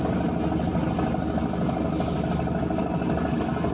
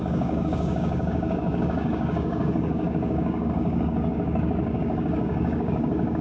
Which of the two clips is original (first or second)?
first